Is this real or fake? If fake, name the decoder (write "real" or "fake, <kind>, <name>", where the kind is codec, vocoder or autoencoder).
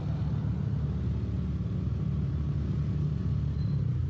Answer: real